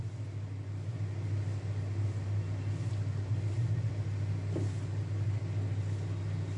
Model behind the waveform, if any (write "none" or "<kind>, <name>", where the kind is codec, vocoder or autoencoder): none